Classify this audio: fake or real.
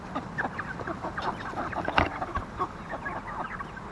real